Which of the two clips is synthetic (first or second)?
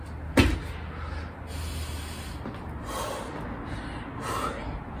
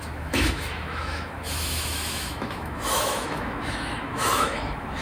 second